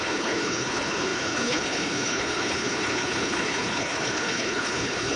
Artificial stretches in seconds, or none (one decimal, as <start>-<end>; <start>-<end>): 0.0-5.2